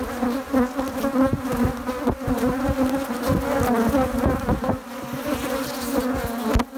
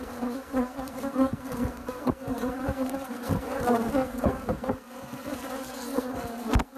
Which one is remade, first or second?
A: second